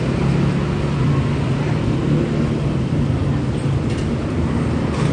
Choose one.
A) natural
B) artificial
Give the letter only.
A